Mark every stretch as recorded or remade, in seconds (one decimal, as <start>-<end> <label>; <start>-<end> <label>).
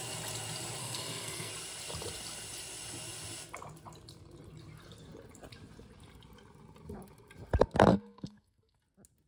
0.0-0.8 recorded; 0.8-1.5 remade; 1.5-7.9 recorded; 7.9-8.8 remade; 8.8-9.3 recorded